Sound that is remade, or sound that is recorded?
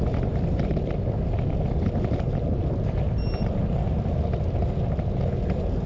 recorded